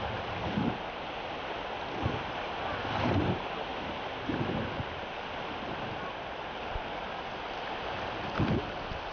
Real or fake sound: real